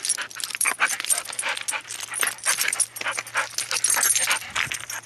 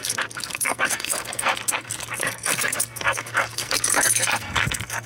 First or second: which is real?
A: first